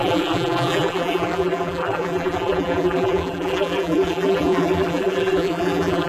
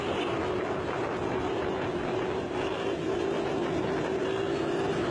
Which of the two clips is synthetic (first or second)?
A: first